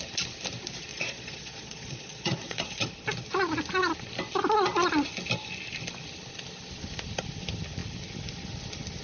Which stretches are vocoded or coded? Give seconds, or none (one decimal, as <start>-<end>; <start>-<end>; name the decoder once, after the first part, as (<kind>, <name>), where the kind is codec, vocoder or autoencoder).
0.9-2.9 (vocoder, Vocos)